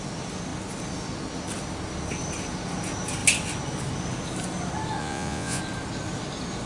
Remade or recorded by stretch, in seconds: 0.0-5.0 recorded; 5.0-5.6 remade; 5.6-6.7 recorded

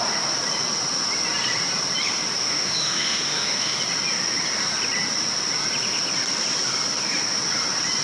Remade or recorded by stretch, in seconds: 0.0-2.4 recorded; 2.4-3.8 remade; 3.8-8.0 recorded